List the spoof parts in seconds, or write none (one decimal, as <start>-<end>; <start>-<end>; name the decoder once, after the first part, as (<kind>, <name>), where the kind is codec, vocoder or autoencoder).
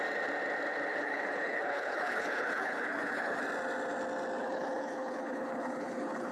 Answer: 0.9-3.4 (codec, HILCodec); 4.4-6.3